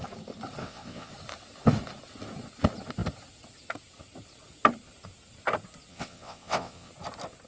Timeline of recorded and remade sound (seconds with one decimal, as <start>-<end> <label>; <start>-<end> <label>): 0.0-0.6 recorded; 0.6-1.1 remade; 1.1-5.9 recorded; 5.9-6.9 remade; 6.9-7.5 recorded

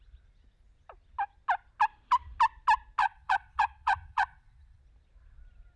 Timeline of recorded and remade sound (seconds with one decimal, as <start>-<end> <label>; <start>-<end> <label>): 0.0-3.0 recorded; 3.0-4.8 remade; 4.8-5.8 recorded

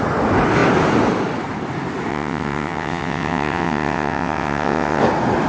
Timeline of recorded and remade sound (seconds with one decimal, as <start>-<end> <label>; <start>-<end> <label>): 0.0-2.1 recorded; 2.1-5.0 remade; 5.0-5.5 recorded

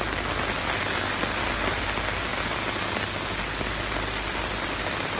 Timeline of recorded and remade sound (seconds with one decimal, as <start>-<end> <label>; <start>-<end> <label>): 0.0-5.2 recorded

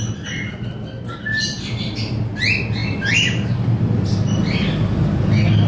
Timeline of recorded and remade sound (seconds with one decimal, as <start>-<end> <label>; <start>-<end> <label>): 0.0-5.7 recorded

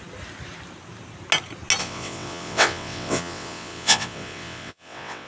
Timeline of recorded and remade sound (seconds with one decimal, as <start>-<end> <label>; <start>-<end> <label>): 0.0-1.8 recorded; 1.8-5.3 remade

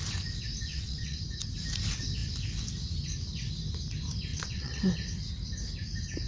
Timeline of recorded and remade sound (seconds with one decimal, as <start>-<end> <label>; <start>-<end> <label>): 0.0-0.7 recorded; 0.7-1.2 remade; 1.2-4.3 recorded; 4.3-4.8 remade; 4.8-6.3 recorded

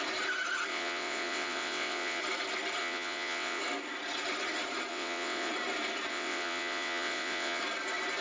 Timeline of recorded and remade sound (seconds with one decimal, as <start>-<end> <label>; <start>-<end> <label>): 0.0-0.7 recorded; 0.7-2.2 remade; 2.2-2.8 recorded; 2.8-3.6 remade; 3.6-4.9 recorded; 4.9-5.5 remade; 5.5-6.1 recorded; 6.1-7.6 remade; 7.6-8.2 recorded